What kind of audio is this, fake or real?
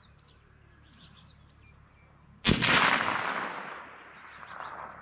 real